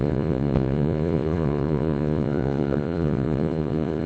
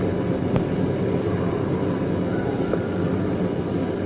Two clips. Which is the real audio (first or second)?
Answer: second